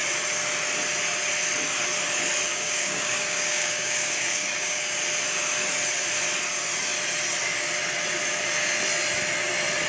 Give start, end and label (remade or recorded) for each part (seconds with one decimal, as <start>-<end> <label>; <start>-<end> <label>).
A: 0.0-2.5 recorded; 2.5-5.0 remade; 5.0-9.9 recorded